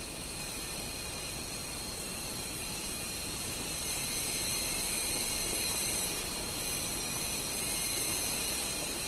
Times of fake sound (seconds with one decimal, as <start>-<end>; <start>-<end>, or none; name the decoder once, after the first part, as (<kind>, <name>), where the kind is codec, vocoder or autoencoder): 1.6-6.0 (vocoder, BigVGAN v2)